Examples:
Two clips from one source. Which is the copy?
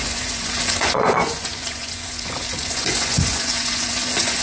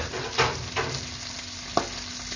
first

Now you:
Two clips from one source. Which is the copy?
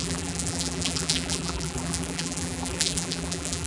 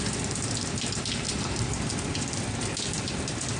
first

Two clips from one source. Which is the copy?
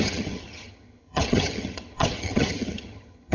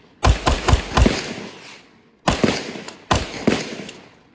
first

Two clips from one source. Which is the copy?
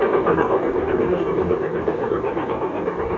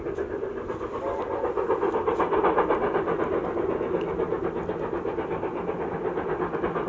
first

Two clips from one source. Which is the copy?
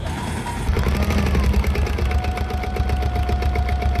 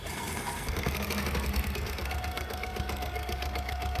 second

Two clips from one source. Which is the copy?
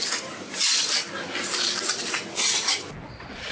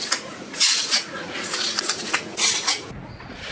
second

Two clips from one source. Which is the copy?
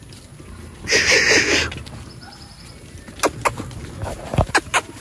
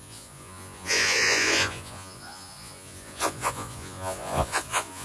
second